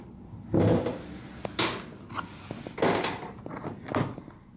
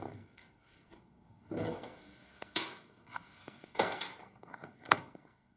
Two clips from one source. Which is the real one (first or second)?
first